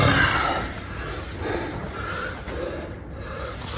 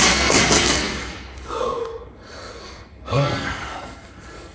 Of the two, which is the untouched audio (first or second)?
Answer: first